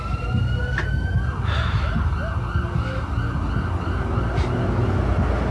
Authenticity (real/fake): real